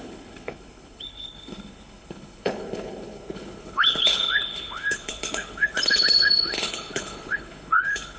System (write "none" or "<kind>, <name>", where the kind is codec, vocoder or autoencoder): codec, HILCodec